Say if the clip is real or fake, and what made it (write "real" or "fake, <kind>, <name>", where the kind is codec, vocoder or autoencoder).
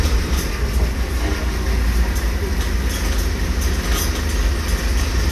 real